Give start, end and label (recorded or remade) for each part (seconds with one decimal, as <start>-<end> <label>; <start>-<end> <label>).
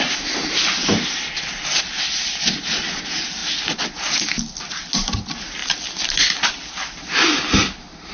0.0-8.1 recorded